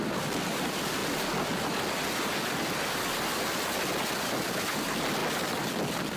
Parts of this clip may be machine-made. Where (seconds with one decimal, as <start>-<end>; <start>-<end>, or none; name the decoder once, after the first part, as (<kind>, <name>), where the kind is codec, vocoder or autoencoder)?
none